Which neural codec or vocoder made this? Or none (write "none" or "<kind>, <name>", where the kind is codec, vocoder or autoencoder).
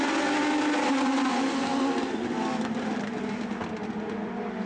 none